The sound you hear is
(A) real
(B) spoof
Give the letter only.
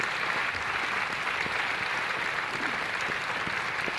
A